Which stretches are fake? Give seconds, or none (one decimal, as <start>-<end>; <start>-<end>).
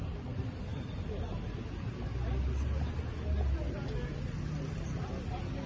none